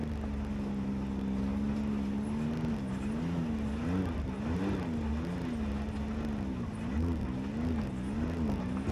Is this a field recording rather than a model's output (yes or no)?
yes